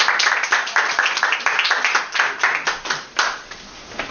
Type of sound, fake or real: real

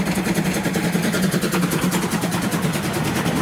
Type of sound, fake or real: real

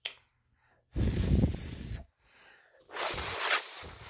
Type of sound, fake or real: real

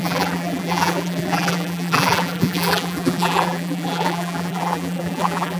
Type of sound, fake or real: fake